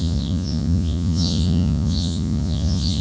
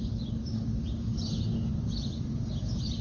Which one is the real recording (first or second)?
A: second